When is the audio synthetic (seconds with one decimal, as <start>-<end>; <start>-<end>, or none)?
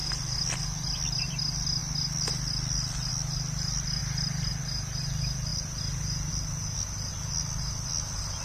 4.0-4.5